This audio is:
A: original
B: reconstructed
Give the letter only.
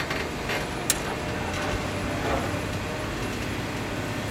A